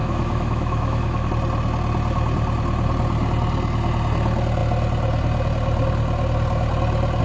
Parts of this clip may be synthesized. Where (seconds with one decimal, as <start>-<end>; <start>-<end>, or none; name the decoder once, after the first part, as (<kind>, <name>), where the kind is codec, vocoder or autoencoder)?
0.0-1.3 (autoencoder, DAC-VAE)